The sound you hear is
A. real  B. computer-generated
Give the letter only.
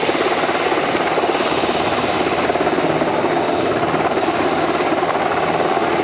A